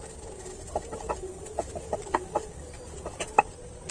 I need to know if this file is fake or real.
real